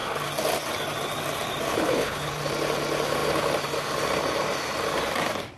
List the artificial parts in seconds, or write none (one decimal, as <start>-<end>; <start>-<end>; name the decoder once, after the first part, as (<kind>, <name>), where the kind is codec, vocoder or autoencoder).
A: 1.7-2.3 (codec, HILCodec)

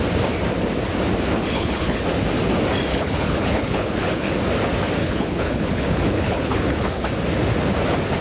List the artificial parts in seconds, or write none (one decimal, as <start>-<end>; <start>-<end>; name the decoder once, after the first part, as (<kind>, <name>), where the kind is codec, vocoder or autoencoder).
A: 1.4-2.0 (codec, HILCodec); 2.9-4.3; 5.0-7.1

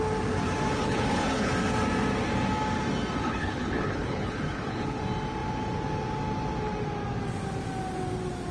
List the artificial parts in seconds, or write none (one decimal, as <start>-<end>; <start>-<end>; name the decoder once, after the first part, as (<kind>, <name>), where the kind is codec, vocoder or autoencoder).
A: 0.8-1.5 (codec, HILCodec); 3.2-5.0

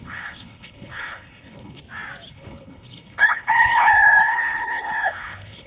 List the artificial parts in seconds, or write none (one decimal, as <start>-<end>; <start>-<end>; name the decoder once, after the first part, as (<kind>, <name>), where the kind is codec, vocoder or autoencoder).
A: 0.0-1.8 (codec, HILCodec); 2.3-5.7

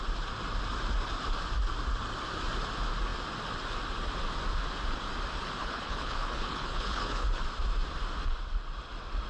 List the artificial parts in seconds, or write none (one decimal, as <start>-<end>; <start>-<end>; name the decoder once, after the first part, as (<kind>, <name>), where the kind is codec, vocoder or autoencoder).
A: 5.6-7.4 (codec, HILCodec)

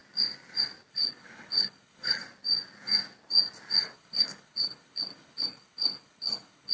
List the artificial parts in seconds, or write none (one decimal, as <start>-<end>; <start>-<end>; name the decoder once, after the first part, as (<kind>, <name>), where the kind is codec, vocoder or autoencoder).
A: 0.9-2.2 (codec, HILCodec); 3.8-6.7

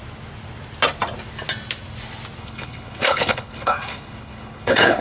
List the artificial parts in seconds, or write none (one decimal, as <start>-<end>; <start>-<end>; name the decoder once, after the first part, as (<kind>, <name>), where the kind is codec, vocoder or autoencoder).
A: 2.4-5.0 (codec, HILCodec)

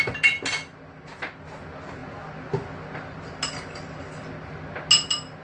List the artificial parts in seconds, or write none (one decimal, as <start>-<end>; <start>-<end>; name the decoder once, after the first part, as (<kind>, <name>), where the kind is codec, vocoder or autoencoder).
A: none